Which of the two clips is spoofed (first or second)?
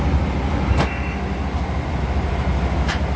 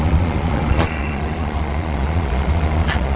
second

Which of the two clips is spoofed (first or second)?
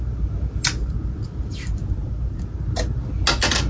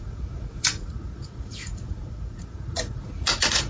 second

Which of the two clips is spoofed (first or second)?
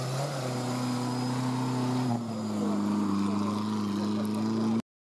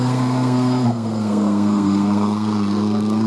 second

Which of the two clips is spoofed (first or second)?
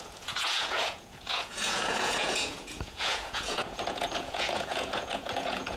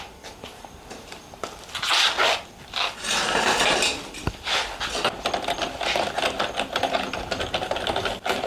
first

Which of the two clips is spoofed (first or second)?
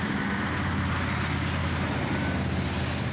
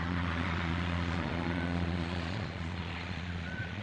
second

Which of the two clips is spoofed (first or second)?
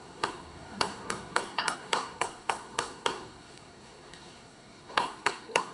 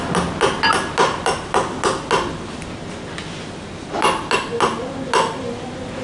first